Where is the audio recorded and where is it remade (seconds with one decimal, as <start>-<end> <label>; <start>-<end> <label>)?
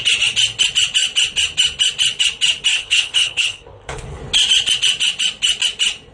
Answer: 0.0-2.7 recorded; 2.7-4.2 remade; 4.2-6.1 recorded